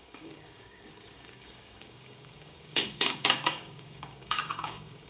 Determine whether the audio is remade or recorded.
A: remade